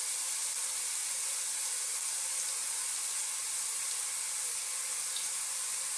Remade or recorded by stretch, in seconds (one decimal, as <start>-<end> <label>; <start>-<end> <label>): 0.0-6.0 recorded